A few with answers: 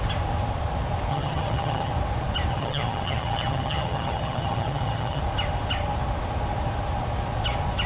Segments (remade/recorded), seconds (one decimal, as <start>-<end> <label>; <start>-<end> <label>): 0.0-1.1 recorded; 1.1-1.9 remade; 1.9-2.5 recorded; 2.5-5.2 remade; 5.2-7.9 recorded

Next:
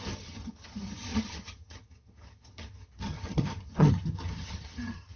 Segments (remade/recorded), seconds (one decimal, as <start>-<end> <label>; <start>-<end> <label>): 0.0-5.2 remade

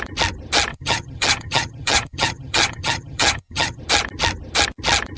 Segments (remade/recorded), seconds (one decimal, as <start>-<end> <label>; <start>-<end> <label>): 0.0-0.7 recorded; 0.7-3.8 remade; 3.8-5.2 recorded

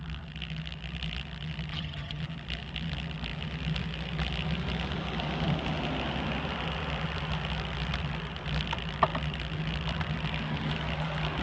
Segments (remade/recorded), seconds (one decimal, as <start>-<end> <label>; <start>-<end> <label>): 0.0-1.7 recorded; 1.7-2.2 remade; 2.2-11.4 recorded

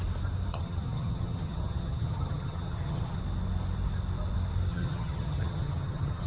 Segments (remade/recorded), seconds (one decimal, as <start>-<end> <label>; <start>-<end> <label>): 0.0-0.5 recorded; 0.5-3.2 remade; 3.2-4.7 recorded; 4.7-6.3 remade

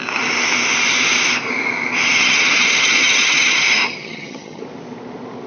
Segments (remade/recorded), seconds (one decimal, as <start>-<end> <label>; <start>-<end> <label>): 0.0-2.2 recorded; 2.2-4.6 remade; 4.6-5.5 recorded

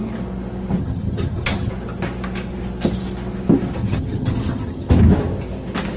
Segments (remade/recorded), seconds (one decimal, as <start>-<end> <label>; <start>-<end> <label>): 0.0-0.8 recorded; 0.8-1.7 remade; 1.7-3.8 recorded; 3.8-4.9 remade; 4.9-6.0 recorded